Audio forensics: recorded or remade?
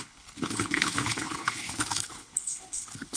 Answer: remade